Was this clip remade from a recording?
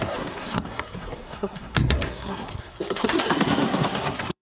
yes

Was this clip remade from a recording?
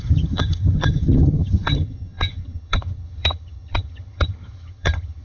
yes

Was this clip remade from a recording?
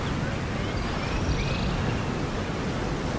no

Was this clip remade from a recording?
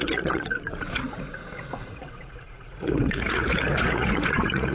yes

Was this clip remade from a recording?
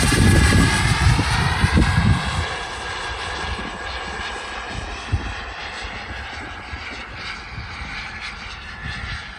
no